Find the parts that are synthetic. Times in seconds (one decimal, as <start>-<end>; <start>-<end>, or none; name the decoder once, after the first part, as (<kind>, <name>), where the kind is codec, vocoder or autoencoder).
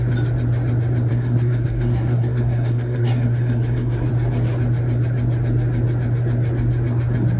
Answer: 1.1-4.1 (codec, SNAC)